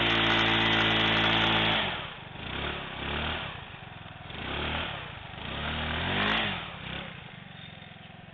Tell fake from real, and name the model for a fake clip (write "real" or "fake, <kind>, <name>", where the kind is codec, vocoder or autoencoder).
real